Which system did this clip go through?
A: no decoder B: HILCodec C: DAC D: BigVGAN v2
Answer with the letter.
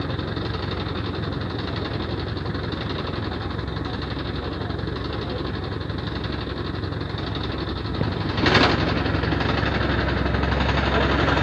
A